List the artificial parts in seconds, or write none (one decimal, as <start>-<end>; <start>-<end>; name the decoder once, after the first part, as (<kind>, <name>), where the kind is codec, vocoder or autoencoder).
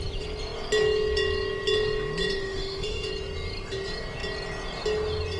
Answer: 2.4-3.1 (autoencoder, DAC-VAE)